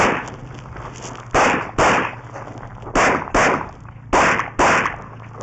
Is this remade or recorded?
recorded